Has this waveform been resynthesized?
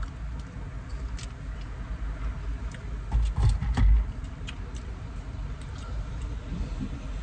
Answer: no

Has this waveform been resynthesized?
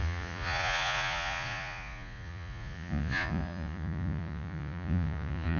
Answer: yes